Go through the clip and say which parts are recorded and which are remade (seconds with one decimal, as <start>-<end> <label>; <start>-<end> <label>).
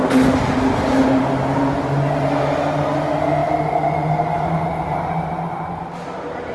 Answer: 0.0-6.5 recorded